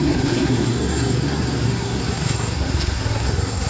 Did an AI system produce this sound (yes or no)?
yes